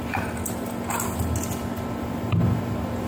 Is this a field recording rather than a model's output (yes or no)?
yes